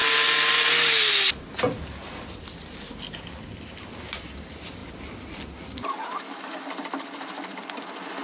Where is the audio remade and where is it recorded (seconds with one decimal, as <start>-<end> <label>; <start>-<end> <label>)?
0.0-8.2 recorded